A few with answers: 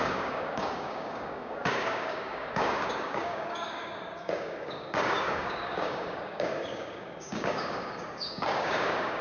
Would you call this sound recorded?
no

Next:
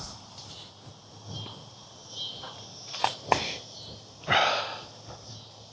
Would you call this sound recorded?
yes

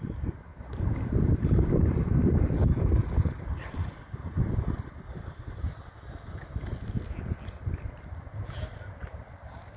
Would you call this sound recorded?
yes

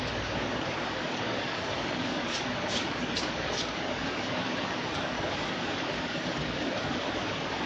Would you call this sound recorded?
no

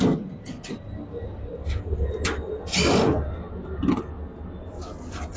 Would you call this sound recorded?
yes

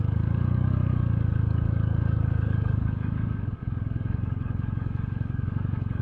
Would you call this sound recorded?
no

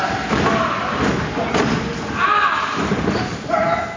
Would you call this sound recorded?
yes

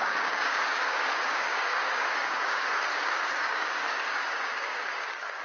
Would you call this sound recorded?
no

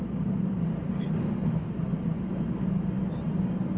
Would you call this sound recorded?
yes